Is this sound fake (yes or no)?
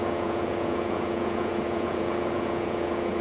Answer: yes